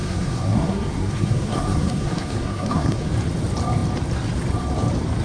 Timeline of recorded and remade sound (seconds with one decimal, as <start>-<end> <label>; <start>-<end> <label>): 0.0-3.1 remade; 3.1-5.2 recorded